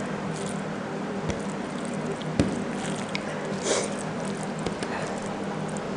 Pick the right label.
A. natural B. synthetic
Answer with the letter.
A